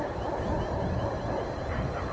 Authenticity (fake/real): fake